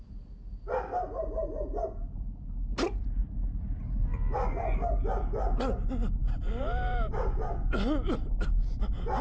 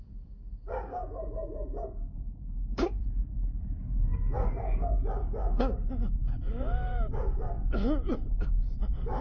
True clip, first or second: first